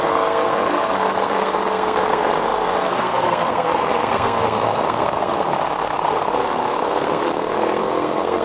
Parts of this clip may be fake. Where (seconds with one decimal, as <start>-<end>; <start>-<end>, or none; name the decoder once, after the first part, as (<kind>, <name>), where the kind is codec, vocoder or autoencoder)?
0.0-8.4 (codec, SNAC)